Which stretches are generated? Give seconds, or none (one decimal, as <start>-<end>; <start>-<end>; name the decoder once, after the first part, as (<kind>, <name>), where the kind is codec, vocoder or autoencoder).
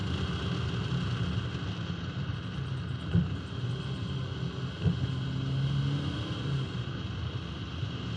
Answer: none